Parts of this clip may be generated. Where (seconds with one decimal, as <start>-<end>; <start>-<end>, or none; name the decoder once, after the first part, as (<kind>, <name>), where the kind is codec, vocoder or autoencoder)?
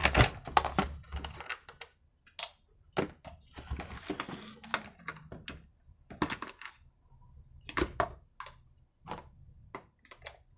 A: none